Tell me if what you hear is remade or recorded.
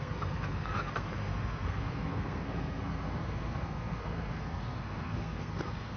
remade